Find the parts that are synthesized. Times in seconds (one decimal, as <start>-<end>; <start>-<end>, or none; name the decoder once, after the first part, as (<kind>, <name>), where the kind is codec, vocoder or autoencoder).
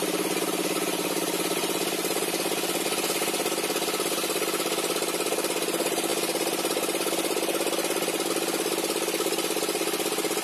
none